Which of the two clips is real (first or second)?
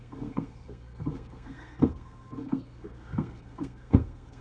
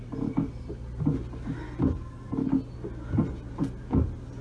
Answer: second